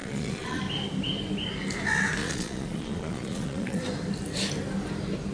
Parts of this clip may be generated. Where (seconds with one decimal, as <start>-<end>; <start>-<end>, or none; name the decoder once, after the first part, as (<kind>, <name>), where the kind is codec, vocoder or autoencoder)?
0.0-0.6 (vocoder, Vocos); 2.2-3.8